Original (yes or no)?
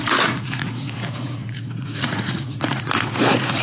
no